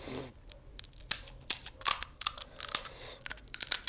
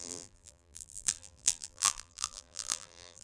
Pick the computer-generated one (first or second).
second